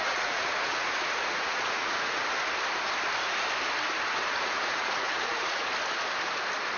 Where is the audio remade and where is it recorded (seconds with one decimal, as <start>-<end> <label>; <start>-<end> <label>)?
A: 0.0-2.2 remade; 2.2-4.2 recorded; 4.2-5.7 remade; 5.7-6.8 recorded